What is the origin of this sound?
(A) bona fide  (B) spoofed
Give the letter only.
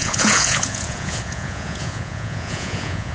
B